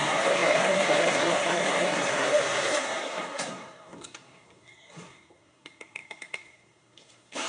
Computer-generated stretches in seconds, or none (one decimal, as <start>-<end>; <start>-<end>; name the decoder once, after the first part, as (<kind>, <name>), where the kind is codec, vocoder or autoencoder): 0.0-7.5 (codec, SNAC)